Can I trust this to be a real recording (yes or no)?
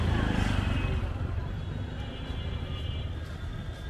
yes